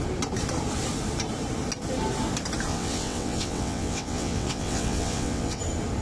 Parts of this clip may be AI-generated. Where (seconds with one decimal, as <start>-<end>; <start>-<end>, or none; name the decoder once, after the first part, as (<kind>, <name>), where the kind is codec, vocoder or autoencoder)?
2.7-5.6 (vocoder, WaveNeXt)